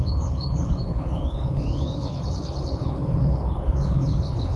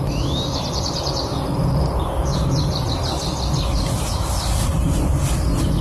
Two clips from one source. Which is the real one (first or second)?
second